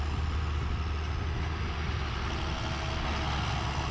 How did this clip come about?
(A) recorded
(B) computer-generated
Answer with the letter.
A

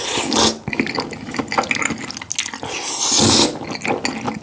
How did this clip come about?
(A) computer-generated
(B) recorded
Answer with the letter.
B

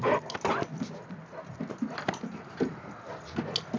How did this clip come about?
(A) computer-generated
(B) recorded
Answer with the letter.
B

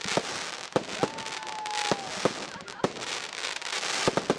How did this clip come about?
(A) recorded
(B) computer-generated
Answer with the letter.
A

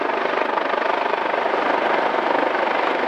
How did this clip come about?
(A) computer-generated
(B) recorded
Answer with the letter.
B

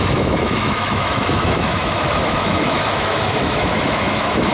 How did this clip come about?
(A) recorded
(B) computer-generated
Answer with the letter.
B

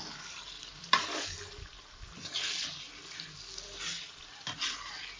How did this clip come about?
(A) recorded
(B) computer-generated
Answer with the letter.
A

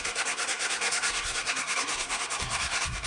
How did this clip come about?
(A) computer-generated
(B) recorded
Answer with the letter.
A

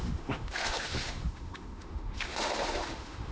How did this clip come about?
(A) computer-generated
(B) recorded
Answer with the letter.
A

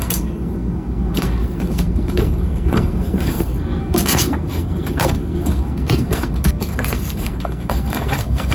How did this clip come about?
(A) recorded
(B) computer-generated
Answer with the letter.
B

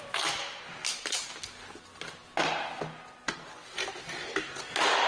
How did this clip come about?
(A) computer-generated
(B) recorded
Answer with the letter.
B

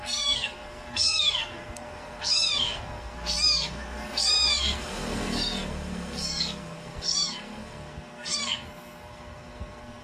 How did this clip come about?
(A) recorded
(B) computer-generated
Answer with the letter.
B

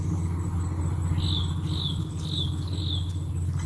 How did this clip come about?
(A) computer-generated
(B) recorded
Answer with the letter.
B